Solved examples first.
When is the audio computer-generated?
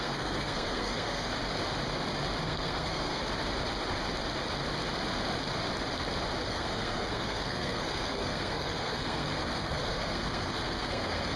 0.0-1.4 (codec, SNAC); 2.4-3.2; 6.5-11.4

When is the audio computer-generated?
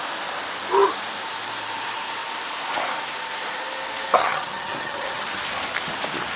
4.2-5.4 (vocoder, HiFi-GAN)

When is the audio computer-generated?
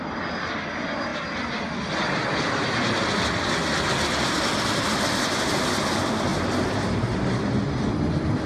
none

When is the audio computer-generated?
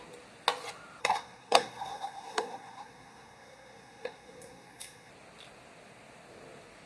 1.0-5.1 (codec, SNAC)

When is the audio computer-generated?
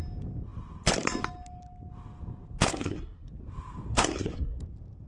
2.7-3.3 (codec, SNAC); 3.9-4.6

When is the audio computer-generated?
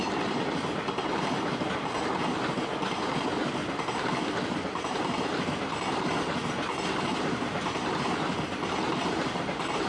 none